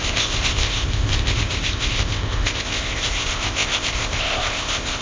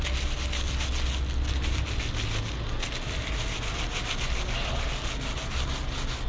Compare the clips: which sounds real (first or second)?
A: second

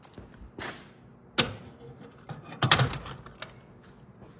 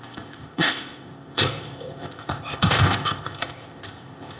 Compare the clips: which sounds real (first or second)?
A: first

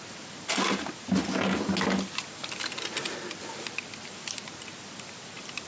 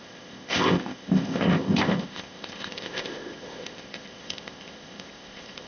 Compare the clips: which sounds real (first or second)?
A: first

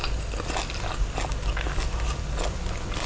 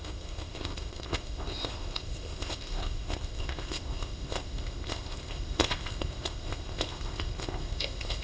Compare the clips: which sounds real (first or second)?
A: first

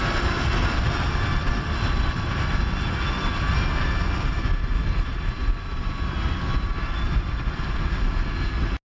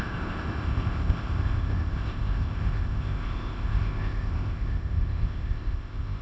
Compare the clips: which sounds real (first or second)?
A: first